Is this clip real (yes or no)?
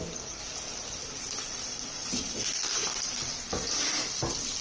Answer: yes